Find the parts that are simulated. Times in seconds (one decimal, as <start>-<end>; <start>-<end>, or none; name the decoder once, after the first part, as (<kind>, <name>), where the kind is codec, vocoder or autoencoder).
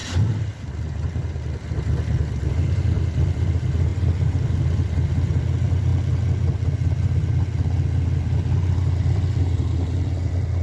0.0-5.9 (vocoder, BigVGAN v2); 8.7-10.6